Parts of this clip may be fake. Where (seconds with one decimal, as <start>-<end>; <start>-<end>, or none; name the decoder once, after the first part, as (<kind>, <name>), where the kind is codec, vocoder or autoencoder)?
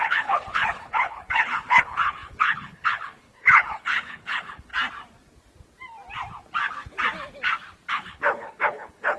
0.0-4.7 (codec, HILCodec); 7.9-9.2